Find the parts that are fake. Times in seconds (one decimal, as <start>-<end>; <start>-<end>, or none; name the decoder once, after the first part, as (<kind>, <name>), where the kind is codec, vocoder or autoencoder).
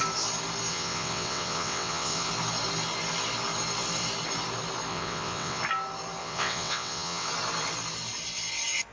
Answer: 0.7-2.3 (vocoder, WaveNeXt); 4.9-5.6; 6.2-7.3